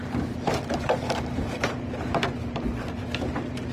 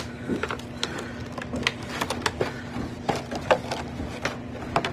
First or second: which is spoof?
first